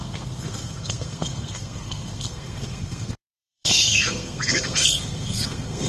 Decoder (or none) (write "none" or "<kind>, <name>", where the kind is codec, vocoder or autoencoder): codec, SNAC